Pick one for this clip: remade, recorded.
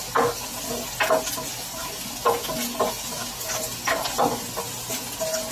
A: recorded